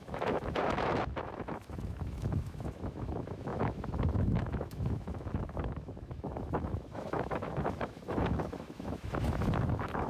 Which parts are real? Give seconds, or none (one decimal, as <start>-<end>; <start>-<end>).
none